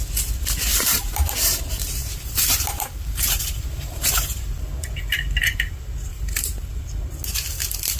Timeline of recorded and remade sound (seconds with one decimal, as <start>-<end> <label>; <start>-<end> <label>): 0.0-0.7 recorded; 0.7-1.3 remade; 1.3-2.0 recorded; 2.0-4.6 remade; 4.6-6.1 recorded; 6.1-6.6 remade; 6.6-8.0 recorded